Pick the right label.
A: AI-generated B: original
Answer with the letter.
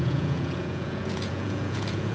A